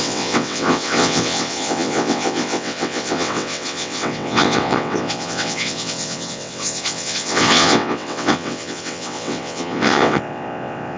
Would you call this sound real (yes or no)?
no